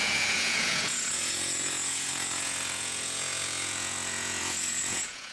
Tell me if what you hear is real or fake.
fake